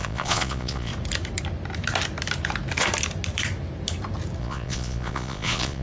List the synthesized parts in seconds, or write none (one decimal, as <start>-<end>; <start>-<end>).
0.0-0.9; 4.4-5.8